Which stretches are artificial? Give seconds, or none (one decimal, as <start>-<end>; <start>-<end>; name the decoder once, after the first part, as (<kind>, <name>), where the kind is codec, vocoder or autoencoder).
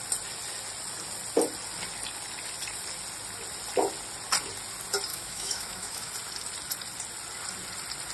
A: 5.1-6.1 (autoencoder, DAC-VAE)